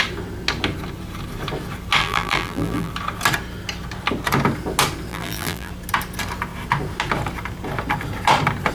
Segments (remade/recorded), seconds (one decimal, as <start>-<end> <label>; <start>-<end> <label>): 0.0-2.0 recorded; 2.0-2.9 remade; 2.9-5.1 recorded; 5.1-5.7 remade; 5.7-8.7 recorded